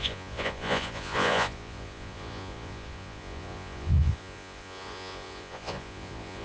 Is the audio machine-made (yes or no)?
yes